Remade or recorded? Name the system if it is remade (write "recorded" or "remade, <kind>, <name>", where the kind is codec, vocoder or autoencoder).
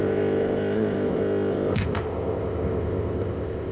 remade, codec, ZipCodec